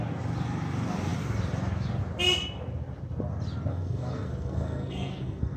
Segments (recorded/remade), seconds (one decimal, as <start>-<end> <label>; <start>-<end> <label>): 0.0-3.7 recorded; 3.7-5.6 remade